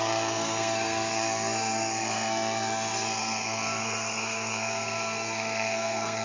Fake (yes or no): yes